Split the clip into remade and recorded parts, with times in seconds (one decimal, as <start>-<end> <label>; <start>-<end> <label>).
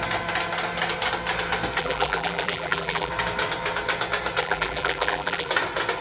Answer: 0.0-1.8 recorded; 1.8-3.1 remade; 3.1-4.4 recorded; 4.4-5.5 remade; 5.5-6.0 recorded